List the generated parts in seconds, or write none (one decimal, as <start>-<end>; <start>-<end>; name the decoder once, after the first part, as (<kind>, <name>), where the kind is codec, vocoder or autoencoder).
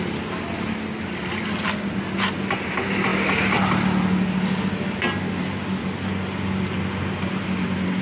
none